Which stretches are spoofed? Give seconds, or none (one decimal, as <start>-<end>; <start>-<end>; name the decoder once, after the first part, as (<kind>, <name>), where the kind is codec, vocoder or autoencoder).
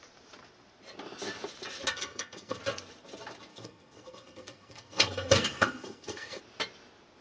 1.9-2.6 (codec, SNAC); 3.5-6.4